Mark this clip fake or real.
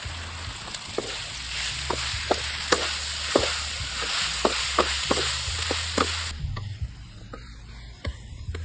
real